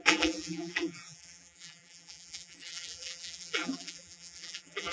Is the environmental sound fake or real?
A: fake